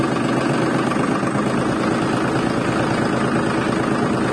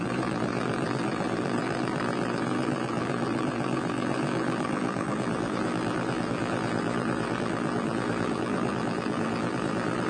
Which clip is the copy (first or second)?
second